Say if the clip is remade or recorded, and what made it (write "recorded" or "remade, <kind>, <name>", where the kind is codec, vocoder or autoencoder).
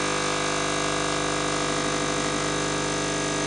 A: recorded